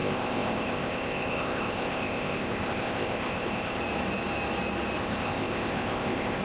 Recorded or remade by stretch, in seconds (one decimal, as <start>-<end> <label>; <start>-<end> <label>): 0.0-3.8 remade; 3.8-5.0 recorded; 5.0-6.4 remade